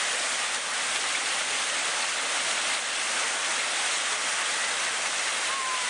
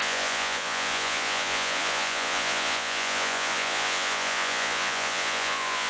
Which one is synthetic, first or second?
second